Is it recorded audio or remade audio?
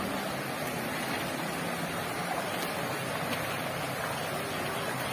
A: recorded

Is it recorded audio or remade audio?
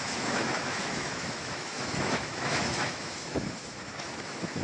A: remade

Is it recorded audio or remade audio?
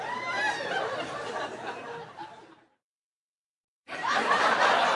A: remade